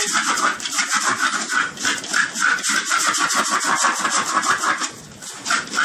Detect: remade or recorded recorded